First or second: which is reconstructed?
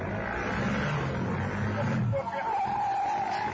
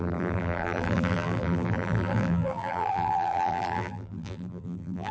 second